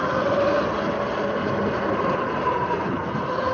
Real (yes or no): yes